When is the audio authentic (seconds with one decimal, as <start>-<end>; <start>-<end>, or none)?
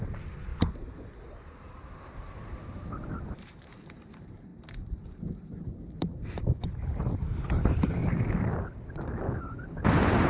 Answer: 0.5-1.4; 8.0-9.7